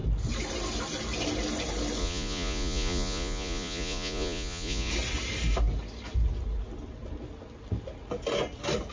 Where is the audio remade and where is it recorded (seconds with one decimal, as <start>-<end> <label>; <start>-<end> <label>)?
0.0-2.0 recorded; 2.0-4.9 remade; 4.9-8.9 recorded